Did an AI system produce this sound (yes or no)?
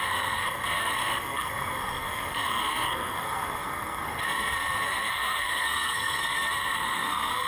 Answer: yes